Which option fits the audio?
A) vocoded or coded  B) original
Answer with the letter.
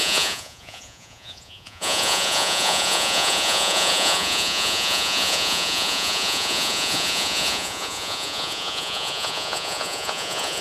A